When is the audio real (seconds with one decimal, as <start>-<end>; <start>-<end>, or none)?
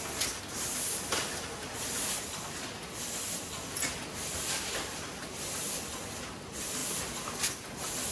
0.0-8.1